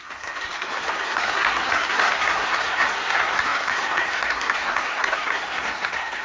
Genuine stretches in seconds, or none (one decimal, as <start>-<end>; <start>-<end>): none